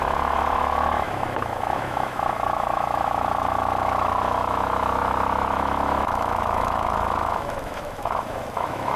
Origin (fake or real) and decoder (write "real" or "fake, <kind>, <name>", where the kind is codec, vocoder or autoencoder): fake, autoencoder, DAC-VAE